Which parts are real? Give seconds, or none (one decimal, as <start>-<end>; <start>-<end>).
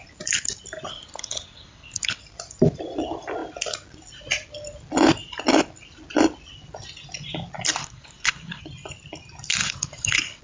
0.0-0.9; 2.2-7.8; 8.6-9.6